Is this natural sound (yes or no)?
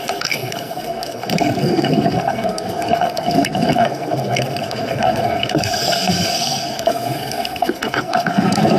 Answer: no